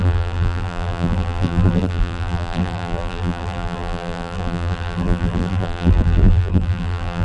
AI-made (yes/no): yes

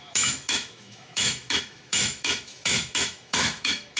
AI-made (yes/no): yes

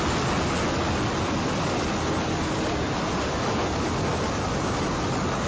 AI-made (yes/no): no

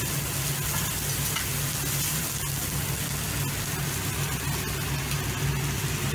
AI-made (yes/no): no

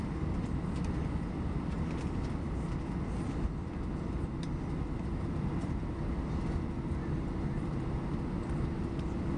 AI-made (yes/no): no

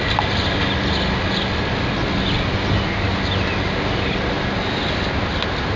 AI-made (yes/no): no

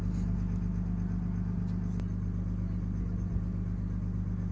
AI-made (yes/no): no